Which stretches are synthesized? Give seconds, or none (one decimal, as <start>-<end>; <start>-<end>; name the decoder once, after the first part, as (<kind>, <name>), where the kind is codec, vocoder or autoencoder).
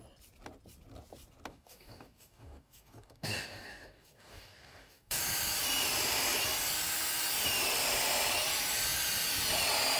1.5-5.2 (codec, DAC)